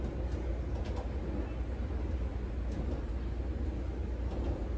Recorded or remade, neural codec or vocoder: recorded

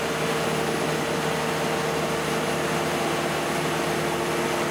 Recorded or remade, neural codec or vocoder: recorded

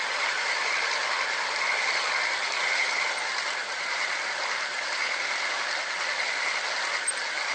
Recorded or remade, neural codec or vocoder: recorded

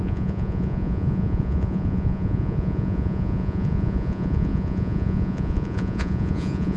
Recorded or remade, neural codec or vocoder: remade, vocoder, Vocos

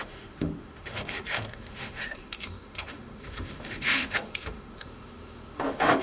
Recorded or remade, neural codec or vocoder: remade, autoencoder, DAC-VAE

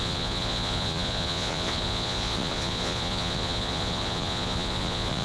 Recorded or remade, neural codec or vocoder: remade, vocoder, Vocos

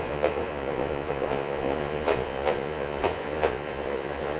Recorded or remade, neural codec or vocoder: remade, vocoder, Vocos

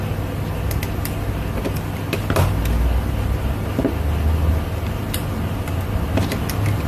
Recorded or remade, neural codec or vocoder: recorded